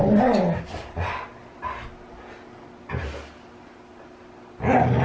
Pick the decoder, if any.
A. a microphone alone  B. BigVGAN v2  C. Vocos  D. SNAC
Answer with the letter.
A